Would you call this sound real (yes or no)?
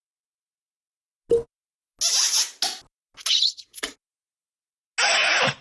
yes